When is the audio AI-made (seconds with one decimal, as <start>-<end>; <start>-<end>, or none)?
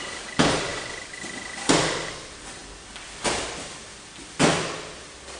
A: 0.7-1.7